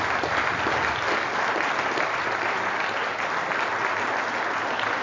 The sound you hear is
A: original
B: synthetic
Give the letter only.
A